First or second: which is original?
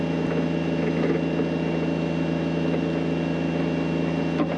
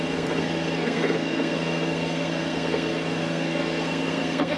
first